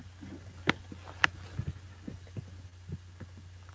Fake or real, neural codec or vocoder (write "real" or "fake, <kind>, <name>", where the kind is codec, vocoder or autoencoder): real